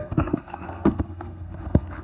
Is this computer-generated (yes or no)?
yes